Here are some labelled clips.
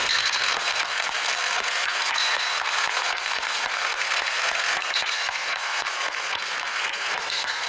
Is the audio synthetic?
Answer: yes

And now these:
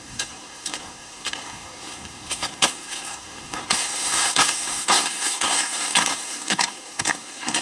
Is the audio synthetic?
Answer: yes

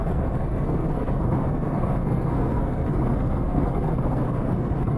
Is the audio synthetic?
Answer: yes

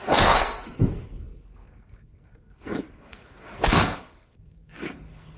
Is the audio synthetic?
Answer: yes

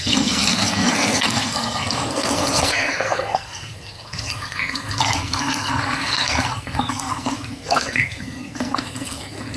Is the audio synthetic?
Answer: yes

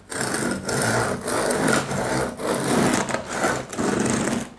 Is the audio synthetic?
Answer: no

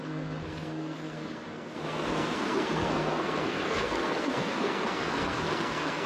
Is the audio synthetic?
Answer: yes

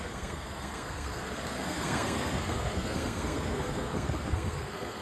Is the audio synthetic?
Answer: yes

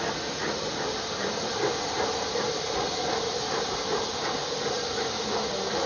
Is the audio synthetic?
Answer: no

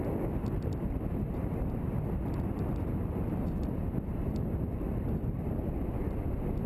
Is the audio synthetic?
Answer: no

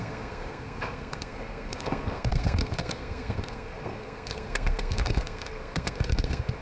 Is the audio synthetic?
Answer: yes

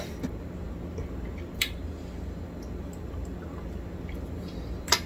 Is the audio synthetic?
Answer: no